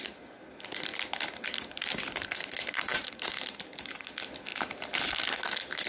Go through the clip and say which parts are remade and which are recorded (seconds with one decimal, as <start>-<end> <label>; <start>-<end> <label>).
0.0-2.9 recorded; 2.9-3.9 remade; 3.9-5.9 recorded